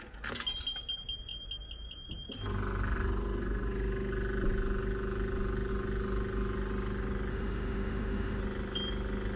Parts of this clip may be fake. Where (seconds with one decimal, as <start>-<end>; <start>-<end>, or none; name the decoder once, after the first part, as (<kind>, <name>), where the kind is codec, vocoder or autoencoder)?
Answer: 7.3-8.4 (autoencoder, DAC-VAE)